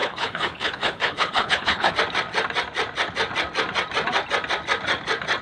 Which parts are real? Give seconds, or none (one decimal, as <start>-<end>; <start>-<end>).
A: 1.9-5.4